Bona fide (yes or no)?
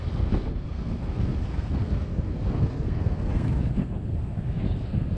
no